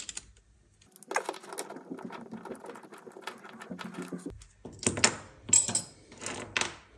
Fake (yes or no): no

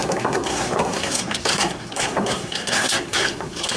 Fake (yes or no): yes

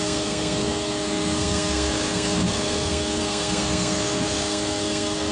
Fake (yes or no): yes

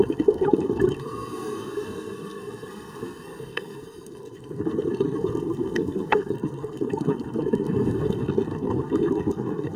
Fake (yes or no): yes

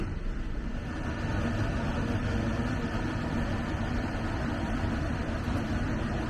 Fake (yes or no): no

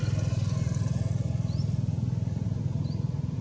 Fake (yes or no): no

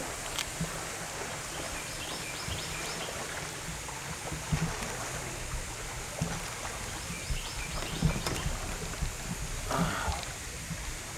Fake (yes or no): no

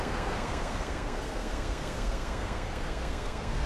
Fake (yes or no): yes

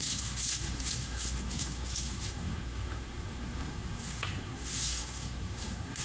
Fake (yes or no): yes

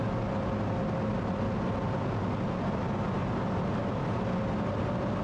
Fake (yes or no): no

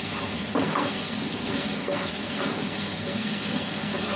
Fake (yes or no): yes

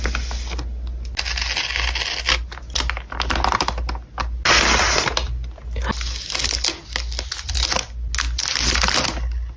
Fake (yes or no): no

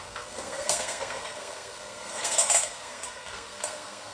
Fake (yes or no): yes